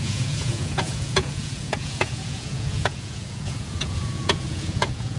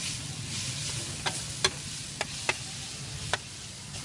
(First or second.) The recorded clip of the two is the second